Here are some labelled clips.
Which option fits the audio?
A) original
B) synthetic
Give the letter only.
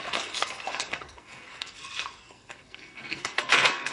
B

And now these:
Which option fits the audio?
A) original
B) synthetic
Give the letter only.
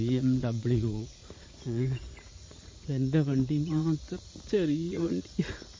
B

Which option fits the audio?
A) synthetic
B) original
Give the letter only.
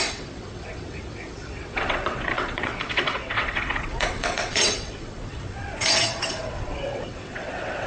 A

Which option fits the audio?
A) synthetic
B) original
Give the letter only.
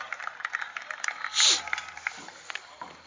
A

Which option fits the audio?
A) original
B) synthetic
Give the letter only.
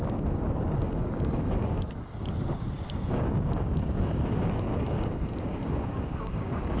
B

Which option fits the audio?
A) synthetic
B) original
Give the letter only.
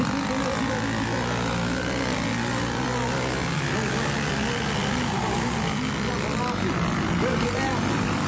B